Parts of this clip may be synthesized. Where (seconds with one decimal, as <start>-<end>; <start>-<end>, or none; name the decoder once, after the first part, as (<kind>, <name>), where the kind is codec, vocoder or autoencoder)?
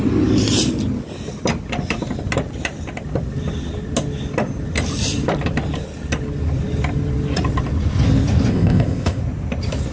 8.5-9.2 (codec, ZipCodec)